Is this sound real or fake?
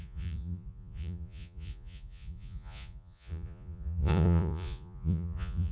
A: fake